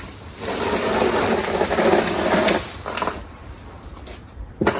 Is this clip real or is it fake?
fake